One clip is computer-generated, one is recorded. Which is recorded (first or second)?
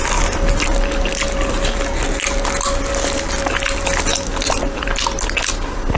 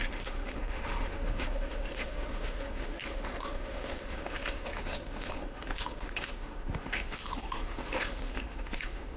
first